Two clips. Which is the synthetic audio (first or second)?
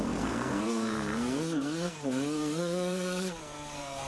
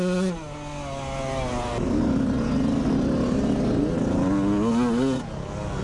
first